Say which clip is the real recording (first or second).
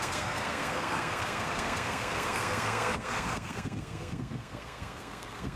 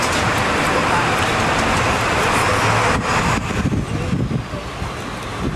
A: second